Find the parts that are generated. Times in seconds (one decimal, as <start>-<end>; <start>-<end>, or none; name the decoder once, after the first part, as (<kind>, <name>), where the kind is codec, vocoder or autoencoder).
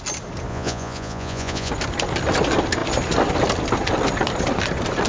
0.5-1.7 (vocoder, Vocos)